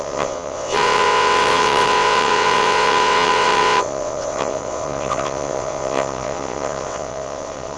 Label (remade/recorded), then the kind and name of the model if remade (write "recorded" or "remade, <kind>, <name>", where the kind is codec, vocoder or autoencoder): remade, vocoder, WaveNeXt